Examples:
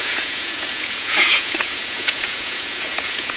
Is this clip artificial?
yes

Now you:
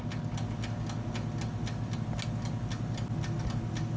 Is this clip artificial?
no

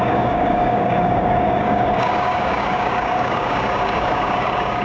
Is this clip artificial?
yes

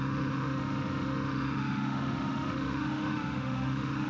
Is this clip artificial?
yes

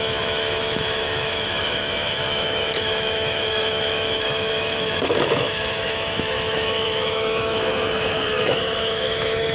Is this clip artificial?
yes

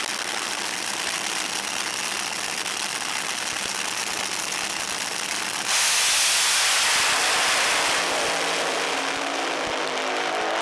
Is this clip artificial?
no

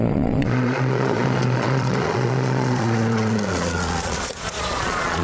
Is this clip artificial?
yes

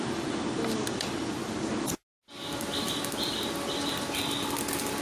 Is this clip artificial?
no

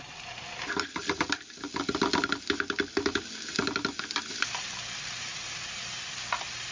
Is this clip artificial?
no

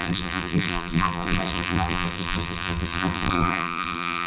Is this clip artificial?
yes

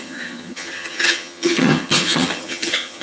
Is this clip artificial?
yes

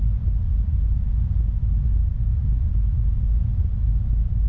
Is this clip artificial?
no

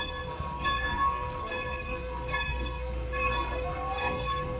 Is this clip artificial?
yes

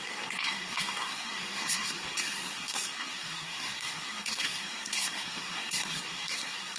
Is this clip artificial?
yes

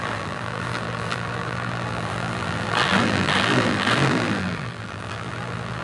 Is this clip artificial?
yes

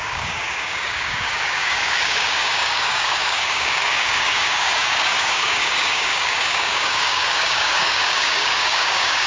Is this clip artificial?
yes